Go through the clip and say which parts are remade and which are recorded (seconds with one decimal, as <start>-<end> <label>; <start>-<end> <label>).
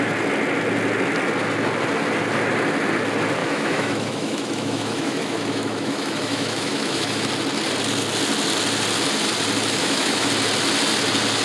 0.0-3.4 recorded; 3.4-7.3 remade; 7.3-9.8 recorded; 9.8-10.3 remade; 10.3-11.4 recorded